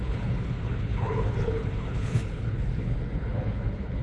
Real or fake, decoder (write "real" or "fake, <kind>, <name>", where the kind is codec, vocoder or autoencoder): fake, codec, HILCodec